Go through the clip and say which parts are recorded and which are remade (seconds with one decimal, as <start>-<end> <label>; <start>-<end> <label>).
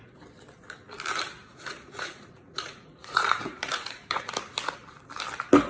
0.0-1.5 recorded; 1.5-4.3 remade; 4.3-5.7 recorded